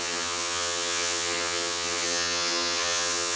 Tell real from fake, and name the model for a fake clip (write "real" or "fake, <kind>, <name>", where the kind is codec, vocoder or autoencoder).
fake, vocoder, HiFi-GAN